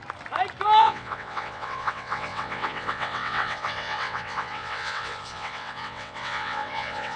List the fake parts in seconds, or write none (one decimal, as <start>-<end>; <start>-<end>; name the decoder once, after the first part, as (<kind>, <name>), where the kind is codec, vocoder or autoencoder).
0.8-7.2 (vocoder, WaveNeXt)